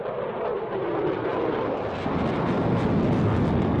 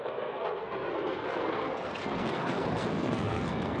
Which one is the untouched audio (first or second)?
first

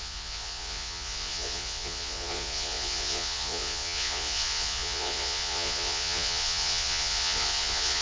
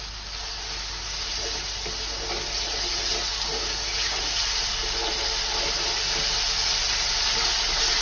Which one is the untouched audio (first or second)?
second